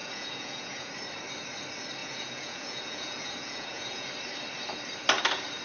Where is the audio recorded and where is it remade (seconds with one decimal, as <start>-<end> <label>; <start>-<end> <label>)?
0.0-0.9 remade; 0.9-2.0 recorded; 2.0-4.1 remade; 4.1-5.6 recorded